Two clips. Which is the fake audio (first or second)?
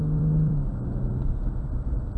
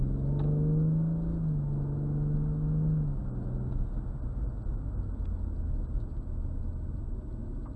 first